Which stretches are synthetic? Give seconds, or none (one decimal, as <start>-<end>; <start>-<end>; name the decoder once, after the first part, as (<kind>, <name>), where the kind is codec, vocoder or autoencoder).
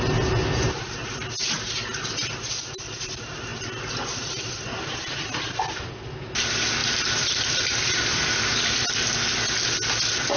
6.8-9.1 (vocoder, BigVGAN v2)